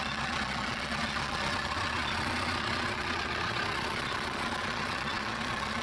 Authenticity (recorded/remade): remade